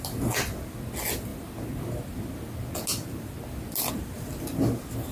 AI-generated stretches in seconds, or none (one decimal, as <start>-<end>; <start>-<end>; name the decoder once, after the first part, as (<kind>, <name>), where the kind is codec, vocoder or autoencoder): none